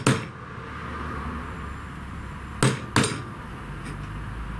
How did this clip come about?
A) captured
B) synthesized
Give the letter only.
A